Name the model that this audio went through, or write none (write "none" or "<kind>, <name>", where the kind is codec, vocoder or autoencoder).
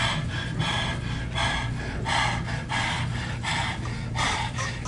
none